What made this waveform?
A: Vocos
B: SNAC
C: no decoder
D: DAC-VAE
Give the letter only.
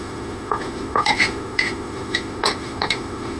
D